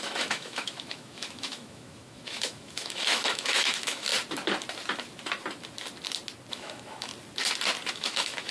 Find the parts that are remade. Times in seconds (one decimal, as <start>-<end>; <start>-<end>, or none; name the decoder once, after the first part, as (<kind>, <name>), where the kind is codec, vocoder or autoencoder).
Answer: 0.0-4.1 (autoencoder, DAC-VAE); 6.5-7.1; 7.9-8.5